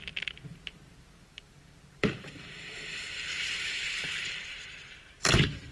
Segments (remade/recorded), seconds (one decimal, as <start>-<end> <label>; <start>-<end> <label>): 0.0-0.5 recorded; 0.5-3.9 remade; 3.9-5.7 recorded